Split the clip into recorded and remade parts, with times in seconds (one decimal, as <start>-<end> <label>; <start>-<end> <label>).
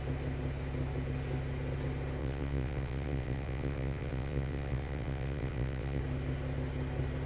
0.0-2.2 recorded; 2.2-6.0 remade; 6.0-7.3 recorded